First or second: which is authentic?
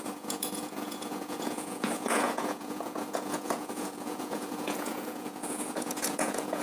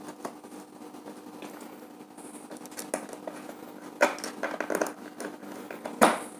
second